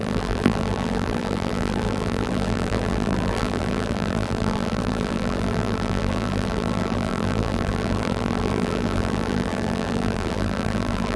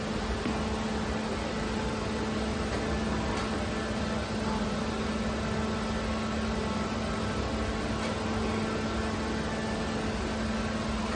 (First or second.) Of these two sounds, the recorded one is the second